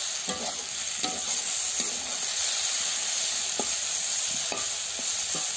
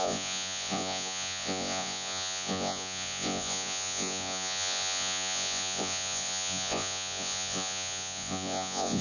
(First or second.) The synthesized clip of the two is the second